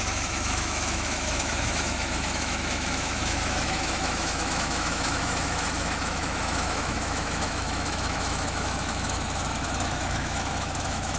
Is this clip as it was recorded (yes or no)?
no